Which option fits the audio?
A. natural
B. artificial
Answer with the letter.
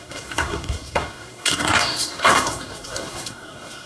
B